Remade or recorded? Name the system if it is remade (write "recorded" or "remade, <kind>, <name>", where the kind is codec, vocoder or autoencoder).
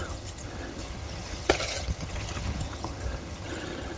remade, vocoder, HiFi-GAN